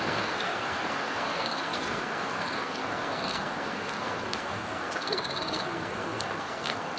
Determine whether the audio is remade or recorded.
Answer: remade